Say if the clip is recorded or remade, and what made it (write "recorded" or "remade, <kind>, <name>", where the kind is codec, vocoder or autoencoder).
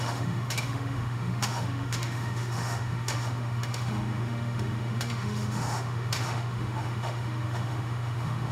remade, autoencoder, DAC-VAE